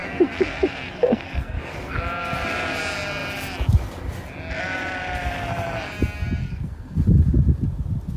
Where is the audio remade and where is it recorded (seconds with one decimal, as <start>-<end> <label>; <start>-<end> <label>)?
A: 0.0-2.0 remade; 2.0-6.4 recorded; 6.4-7.0 remade; 7.0-8.2 recorded